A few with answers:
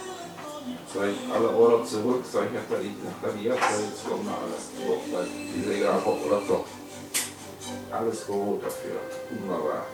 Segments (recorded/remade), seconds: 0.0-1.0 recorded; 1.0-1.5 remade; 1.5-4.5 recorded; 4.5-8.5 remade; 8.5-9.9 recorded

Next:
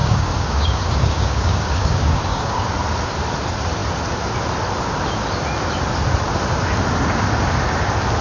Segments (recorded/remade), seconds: 0.0-2.6 remade; 2.6-8.2 recorded

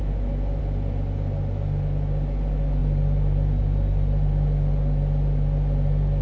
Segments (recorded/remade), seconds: 0.0-6.2 recorded

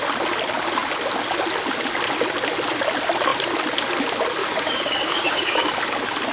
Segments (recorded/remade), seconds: 0.0-4.4 recorded; 4.4-5.7 remade; 5.7-6.3 recorded

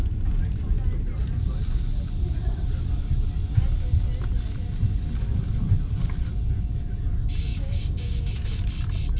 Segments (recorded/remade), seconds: 0.0-7.5 recorded; 7.5-8.3 remade; 8.3-9.2 recorded